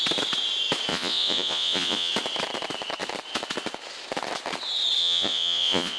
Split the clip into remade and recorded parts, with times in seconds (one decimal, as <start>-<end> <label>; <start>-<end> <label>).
0.0-0.9 recorded; 0.9-2.1 remade; 2.1-5.0 recorded; 5.0-6.0 remade